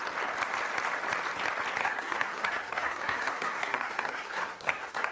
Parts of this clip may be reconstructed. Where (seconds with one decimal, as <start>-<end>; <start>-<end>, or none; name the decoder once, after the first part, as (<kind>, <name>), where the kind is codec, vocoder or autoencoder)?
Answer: 1.8-5.1 (codec, SNAC)

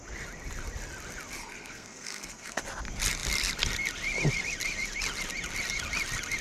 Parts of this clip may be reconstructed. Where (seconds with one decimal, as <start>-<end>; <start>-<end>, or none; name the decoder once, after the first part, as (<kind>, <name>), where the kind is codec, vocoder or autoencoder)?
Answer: 1.4-2.6 (codec, SNAC)

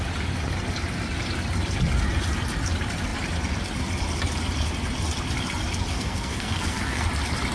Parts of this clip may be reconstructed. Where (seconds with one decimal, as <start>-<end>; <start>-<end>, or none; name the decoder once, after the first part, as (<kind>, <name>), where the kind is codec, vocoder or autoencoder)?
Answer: 5.9-7.1 (codec, SNAC)

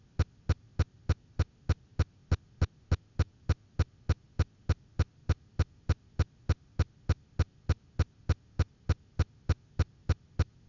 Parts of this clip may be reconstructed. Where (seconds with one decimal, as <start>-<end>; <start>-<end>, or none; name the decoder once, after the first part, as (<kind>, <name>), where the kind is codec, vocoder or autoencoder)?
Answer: none

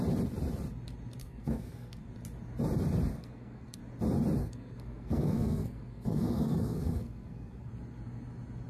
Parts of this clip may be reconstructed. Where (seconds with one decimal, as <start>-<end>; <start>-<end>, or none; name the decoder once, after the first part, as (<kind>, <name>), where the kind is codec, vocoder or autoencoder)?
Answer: 1.2-2.1 (codec, SNAC); 3.1-3.8; 4.4-7.7

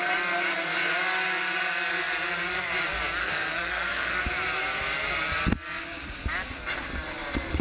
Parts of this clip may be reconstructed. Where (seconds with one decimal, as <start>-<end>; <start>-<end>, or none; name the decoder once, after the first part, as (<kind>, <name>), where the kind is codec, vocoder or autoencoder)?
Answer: 3.2-4.2 (codec, SNAC)